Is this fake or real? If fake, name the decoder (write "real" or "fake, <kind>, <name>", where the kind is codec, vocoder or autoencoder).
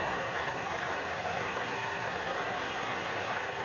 fake, codec, SNAC